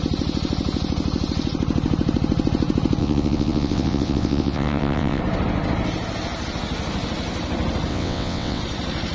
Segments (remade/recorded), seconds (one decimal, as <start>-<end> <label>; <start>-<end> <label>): 0.0-3.0 recorded; 3.0-5.2 remade; 5.2-7.9 recorded; 7.9-8.6 remade; 8.6-9.1 recorded